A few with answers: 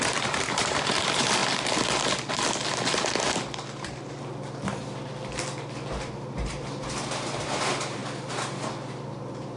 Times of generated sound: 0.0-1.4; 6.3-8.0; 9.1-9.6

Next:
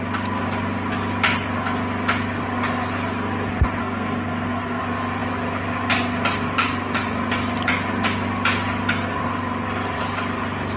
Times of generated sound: 3.8-4.8

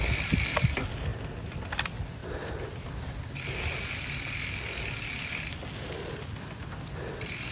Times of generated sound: none

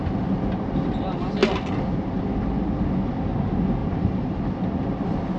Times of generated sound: 3.8-4.4

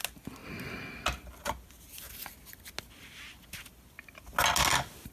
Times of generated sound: none

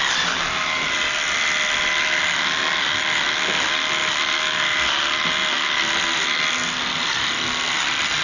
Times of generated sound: none